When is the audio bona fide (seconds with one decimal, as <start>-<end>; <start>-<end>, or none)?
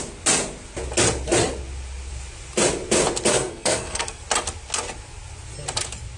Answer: 0.0-3.3; 4.2-6.2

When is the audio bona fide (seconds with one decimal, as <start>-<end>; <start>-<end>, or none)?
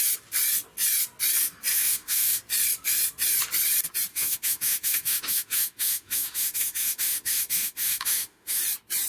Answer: 0.0-1.7; 2.4-4.1; 8.6-9.1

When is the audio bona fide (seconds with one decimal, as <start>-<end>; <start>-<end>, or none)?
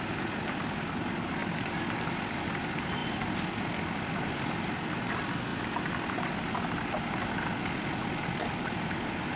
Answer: 0.0-9.4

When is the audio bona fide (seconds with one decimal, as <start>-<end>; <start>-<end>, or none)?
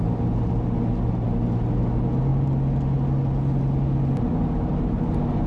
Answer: 0.0-5.5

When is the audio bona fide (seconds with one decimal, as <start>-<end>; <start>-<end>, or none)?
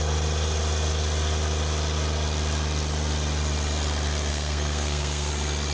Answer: 0.0-4.3; 5.3-5.7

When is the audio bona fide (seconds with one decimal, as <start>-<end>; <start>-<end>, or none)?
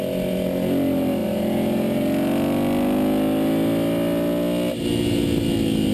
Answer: 0.0-5.9